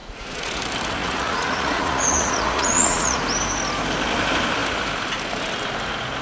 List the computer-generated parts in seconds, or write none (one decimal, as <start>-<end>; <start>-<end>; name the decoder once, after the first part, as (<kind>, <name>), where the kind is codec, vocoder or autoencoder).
0.0-0.6 (vocoder, Vocos); 1.0-3.2